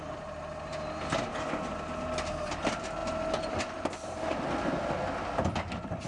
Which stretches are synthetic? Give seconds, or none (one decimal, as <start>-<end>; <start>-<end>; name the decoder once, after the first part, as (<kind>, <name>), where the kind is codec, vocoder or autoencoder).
none